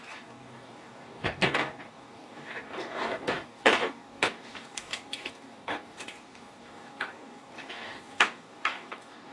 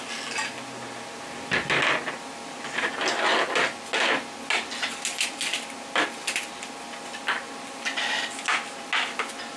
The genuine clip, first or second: second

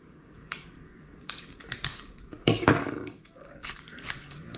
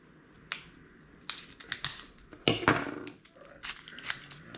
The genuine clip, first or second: second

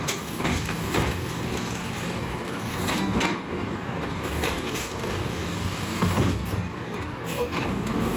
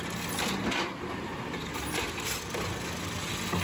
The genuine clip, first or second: second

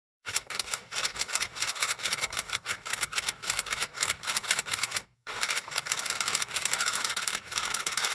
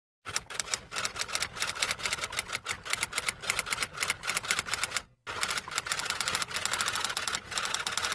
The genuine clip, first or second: second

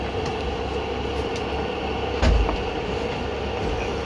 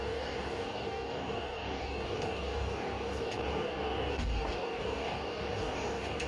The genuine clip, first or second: first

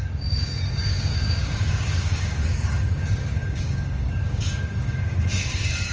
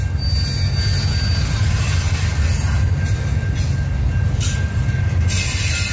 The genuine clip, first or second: second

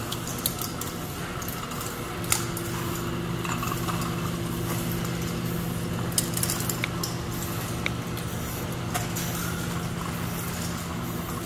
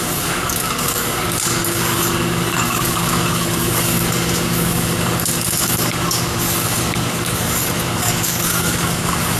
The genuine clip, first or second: first